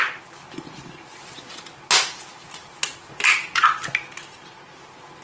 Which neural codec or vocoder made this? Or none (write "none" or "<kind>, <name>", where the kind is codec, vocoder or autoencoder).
none